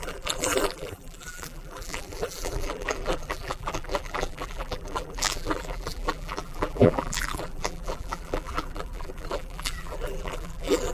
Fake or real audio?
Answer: fake